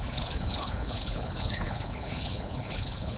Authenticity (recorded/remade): remade